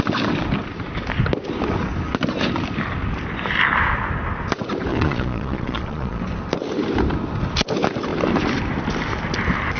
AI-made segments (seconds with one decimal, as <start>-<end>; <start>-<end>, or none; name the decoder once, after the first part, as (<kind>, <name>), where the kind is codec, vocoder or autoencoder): 4.9-6.2 (vocoder, Vocos)